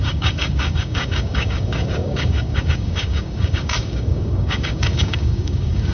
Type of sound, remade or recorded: remade